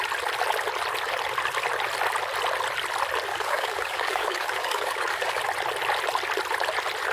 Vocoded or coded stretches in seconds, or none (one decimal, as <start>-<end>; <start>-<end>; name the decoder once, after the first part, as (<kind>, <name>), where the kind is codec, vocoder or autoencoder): 3.3-5.4 (codec, DAC)